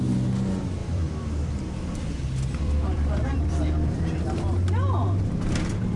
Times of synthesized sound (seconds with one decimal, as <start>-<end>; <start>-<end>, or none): 0.8-4.4